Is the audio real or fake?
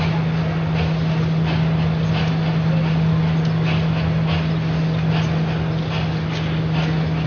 real